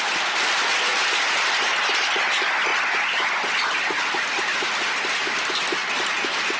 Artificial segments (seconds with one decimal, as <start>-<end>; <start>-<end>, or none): none

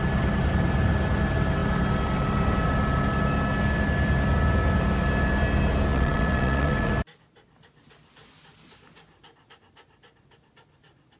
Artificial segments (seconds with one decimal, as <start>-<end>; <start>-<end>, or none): 5.9-6.9

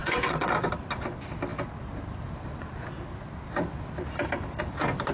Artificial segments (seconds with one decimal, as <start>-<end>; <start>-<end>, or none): 0.0-0.5

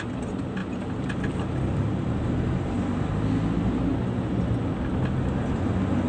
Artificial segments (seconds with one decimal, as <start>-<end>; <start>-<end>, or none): none

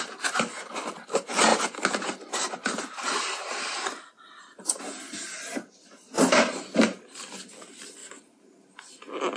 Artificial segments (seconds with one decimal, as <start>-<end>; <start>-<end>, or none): none